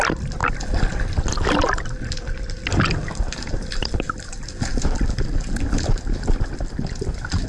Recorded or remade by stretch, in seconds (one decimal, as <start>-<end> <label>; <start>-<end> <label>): 0.0-7.5 recorded